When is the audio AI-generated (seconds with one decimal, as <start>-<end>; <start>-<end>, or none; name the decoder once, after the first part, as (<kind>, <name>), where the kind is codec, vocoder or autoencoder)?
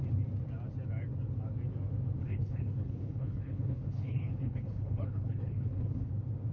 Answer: 2.2-6.1 (codec, HILCodec)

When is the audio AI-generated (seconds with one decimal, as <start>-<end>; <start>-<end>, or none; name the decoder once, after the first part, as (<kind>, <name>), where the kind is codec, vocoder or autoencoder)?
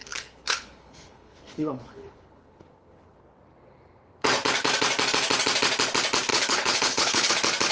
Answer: 0.0-3.2 (codec, HILCodec); 6.3-7.3